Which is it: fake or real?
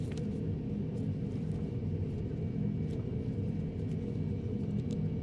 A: real